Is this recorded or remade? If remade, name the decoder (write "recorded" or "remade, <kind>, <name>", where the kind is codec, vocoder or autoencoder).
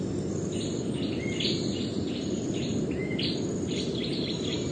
recorded